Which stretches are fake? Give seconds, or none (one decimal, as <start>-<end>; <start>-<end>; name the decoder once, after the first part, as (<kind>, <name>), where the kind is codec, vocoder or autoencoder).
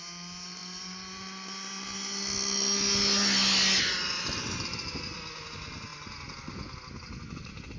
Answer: none